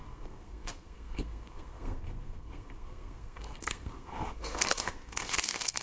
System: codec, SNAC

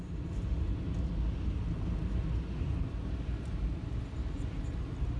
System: none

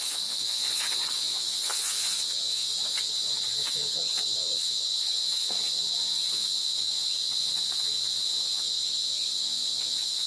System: vocoder, Vocos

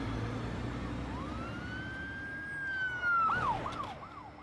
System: none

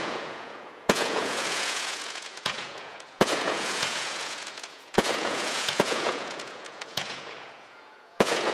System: vocoder, Vocos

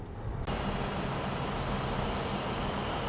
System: none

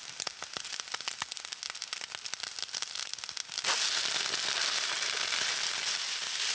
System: none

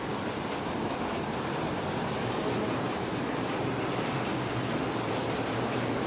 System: none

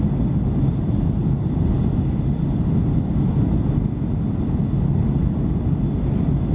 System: none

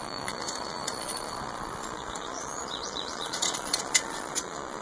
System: vocoder, Vocos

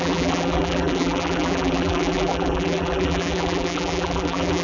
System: vocoder, BigVGAN v2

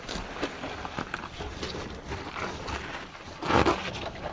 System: none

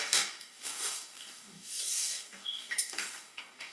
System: codec, DAC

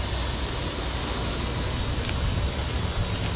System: none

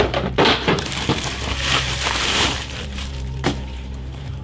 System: vocoder, BigVGAN v2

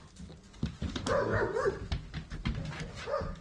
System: none